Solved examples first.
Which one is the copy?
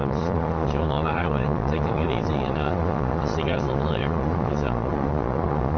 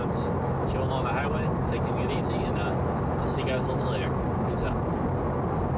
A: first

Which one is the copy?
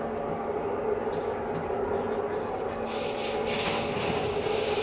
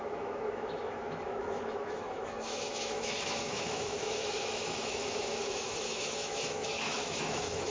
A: second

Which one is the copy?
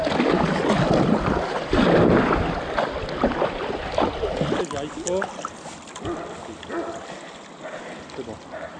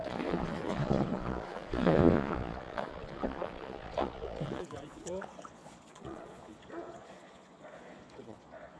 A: second